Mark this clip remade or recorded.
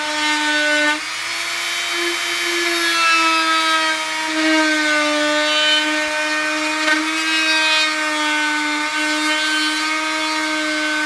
recorded